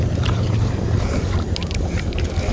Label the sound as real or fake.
fake